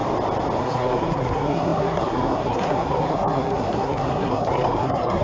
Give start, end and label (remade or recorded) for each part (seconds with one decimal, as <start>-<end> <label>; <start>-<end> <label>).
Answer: 0.0-0.6 recorded; 0.6-5.2 remade